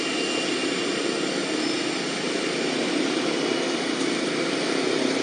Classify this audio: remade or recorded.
recorded